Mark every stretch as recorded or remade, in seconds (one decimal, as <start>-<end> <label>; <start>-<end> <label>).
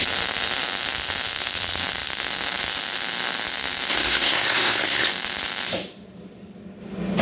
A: 0.0-3.9 recorded; 3.9-5.1 remade; 5.1-7.2 recorded